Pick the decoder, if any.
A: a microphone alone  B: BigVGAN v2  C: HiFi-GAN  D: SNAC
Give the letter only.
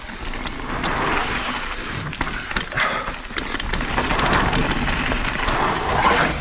A